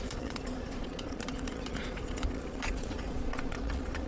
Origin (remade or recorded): remade